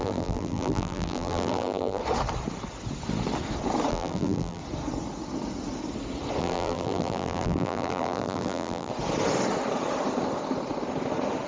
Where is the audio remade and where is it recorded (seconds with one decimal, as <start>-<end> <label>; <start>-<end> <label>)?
0.0-2.0 remade; 2.0-3.9 recorded; 3.9-4.6 remade; 4.6-6.4 recorded; 6.4-8.9 remade; 8.9-11.5 recorded